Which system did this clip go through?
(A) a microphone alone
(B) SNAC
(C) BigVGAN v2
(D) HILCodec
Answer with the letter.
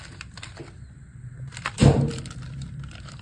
C